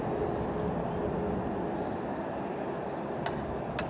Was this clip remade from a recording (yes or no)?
no